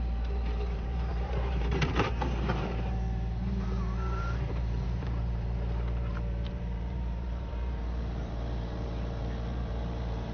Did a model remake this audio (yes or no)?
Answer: yes